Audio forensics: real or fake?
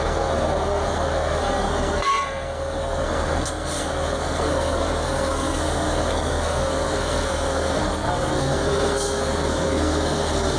fake